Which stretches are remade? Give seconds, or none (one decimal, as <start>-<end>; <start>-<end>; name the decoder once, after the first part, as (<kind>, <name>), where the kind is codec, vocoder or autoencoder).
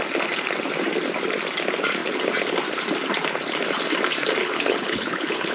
4.4-5.5 (codec, HILCodec)